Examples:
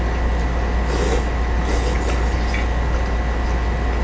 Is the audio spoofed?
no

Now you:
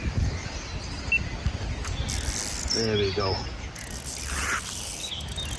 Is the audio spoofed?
no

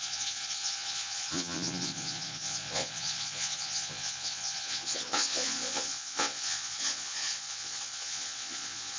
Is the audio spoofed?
yes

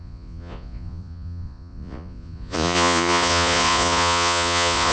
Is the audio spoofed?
yes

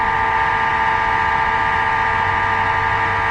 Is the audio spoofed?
no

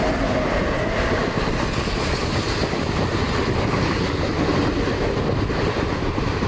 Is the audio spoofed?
no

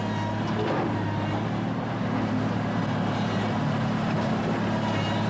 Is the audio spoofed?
no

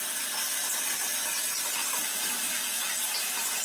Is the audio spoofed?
no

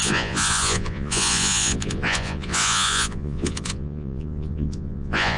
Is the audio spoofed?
yes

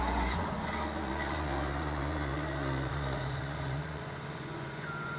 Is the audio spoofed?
yes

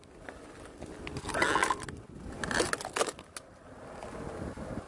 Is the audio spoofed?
no